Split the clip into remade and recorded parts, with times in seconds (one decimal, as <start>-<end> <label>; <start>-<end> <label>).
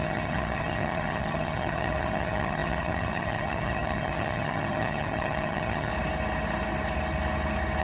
0.0-5.9 remade; 5.9-7.8 recorded